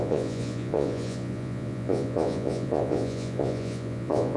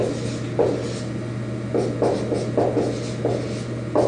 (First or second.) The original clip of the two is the second